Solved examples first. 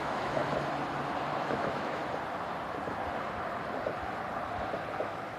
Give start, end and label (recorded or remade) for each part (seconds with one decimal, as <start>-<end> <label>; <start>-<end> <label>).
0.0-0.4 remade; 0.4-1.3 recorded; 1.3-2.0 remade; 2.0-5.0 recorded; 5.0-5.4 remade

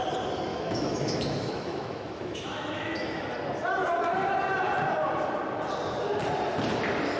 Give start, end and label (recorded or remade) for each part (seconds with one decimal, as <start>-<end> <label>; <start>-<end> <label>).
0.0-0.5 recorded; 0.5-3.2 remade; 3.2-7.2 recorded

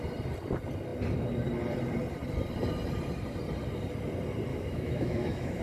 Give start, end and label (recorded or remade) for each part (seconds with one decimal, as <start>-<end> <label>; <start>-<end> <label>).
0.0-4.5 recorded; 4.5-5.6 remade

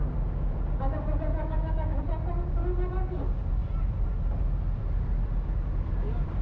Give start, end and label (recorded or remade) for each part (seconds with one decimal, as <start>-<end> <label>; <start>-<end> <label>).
0.0-1.4 recorded; 1.4-2.0 remade; 2.0-6.4 recorded

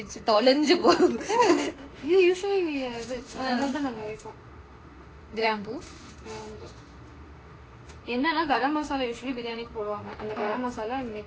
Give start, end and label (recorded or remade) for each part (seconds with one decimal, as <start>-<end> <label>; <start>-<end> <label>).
0.0-0.8 remade; 0.8-1.3 recorded; 1.3-11.3 remade